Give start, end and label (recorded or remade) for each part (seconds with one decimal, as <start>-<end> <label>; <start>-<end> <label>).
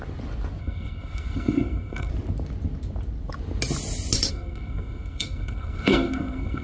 0.0-0.6 recorded; 0.6-2.1 remade; 2.1-4.3 recorded; 4.3-6.6 remade